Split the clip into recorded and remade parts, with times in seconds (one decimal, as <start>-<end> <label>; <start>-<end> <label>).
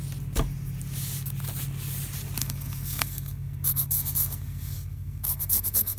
0.0-2.4 recorded; 2.4-6.0 remade